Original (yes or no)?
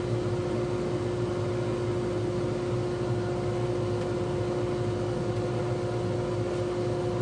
yes